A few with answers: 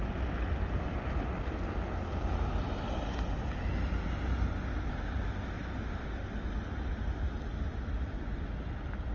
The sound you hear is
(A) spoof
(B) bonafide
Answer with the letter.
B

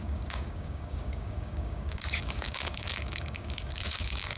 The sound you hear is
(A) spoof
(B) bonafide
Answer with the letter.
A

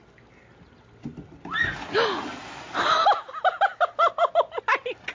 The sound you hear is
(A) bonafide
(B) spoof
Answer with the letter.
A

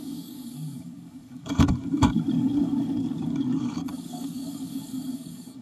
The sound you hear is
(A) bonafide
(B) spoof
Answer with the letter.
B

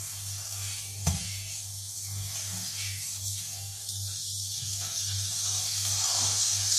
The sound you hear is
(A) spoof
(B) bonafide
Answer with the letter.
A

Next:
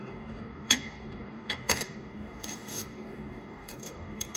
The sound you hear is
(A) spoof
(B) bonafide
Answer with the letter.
A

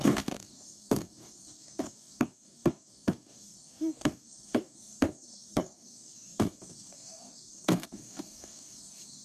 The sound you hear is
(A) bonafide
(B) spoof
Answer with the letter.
B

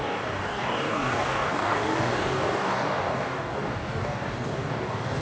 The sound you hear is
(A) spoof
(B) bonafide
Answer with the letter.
A